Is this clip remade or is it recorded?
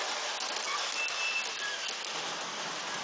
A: recorded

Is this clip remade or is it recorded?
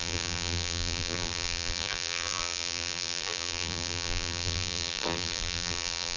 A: remade